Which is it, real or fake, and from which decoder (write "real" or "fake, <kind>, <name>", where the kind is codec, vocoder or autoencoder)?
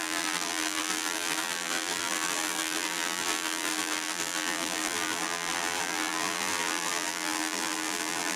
fake, vocoder, BigVGAN v2